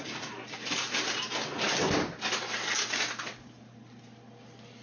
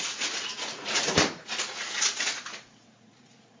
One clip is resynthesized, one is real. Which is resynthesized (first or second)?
second